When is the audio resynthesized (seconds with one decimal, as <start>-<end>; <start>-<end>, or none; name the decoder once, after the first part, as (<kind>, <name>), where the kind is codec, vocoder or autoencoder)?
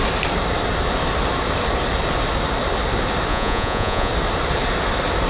3.3-4.1 (vocoder, Vocos)